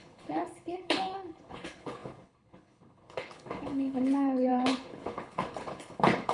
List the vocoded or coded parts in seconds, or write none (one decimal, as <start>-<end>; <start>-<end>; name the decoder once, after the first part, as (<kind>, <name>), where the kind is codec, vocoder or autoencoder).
0.0-6.3 (codec, HILCodec)